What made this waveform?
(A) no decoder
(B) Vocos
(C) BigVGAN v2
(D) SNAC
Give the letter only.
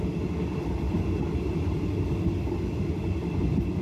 A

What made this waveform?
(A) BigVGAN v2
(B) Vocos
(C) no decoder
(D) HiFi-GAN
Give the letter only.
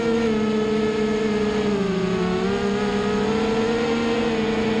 C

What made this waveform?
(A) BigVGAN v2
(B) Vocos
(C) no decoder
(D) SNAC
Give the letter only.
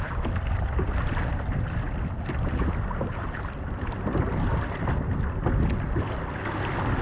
C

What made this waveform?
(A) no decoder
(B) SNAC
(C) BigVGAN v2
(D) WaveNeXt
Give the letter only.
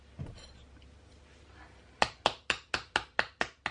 A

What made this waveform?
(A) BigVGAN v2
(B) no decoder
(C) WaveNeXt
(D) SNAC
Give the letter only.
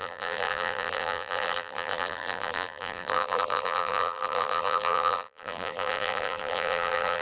A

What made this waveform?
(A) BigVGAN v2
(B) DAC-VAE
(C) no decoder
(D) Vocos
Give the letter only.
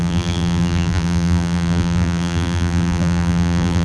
A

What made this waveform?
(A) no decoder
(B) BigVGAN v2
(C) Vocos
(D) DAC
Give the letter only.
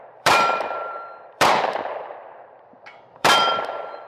B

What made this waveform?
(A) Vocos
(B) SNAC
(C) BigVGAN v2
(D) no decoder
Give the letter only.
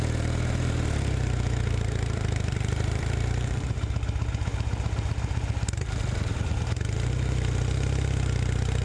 C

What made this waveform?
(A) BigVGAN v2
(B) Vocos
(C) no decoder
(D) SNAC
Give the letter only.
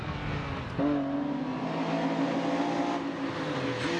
C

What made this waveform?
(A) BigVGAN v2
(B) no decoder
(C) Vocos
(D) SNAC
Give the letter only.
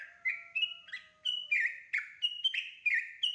B